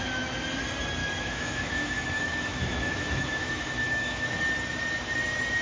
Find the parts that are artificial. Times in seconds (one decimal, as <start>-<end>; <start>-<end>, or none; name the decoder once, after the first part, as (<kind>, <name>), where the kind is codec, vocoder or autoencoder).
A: 1.0-4.4 (autoencoder, DAC-VAE)